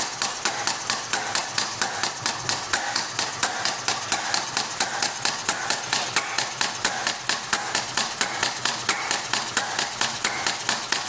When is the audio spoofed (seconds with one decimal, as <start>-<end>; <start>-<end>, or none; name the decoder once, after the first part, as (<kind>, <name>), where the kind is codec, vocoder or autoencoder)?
none